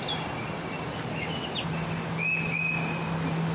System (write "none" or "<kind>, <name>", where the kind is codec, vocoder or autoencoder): none